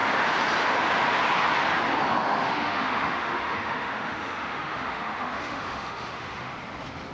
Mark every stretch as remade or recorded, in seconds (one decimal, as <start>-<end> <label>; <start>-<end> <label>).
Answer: 0.0-2.2 recorded; 2.2-6.5 remade; 6.5-7.1 recorded